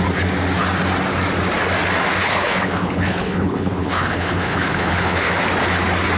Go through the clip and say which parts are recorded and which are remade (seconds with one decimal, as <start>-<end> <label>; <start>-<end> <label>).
0.0-2.2 recorded; 2.2-5.3 remade; 5.3-6.2 recorded